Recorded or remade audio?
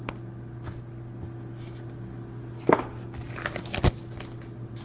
recorded